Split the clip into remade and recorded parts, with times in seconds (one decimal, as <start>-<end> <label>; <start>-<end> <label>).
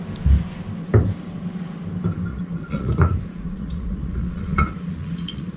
0.0-2.3 recorded; 2.3-5.6 remade